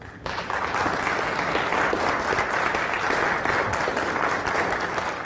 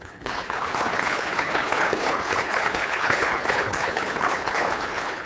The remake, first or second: second